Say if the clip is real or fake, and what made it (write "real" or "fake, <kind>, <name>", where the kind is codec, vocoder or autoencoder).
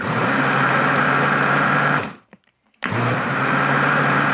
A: fake, vocoder, BigVGAN v2